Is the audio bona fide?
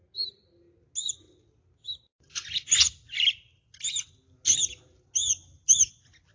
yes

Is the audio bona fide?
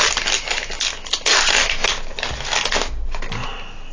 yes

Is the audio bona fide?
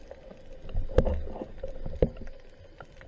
yes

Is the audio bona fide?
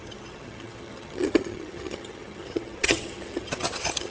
no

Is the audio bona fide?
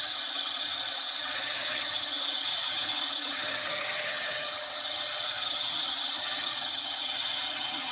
no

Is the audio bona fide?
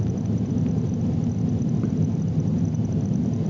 yes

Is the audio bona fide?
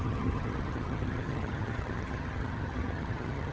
no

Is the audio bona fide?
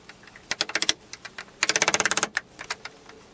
yes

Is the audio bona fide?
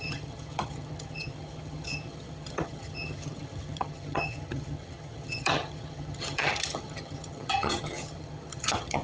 no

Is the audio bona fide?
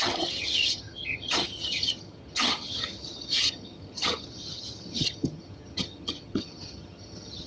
no